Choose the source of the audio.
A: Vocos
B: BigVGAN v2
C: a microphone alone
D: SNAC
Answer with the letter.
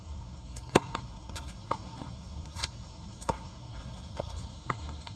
D